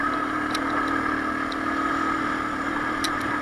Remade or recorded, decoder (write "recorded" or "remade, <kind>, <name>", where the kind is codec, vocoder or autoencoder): recorded